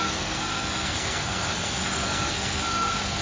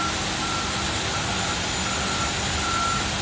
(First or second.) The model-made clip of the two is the first